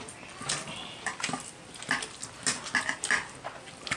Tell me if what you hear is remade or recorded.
recorded